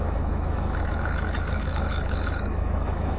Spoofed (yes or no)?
yes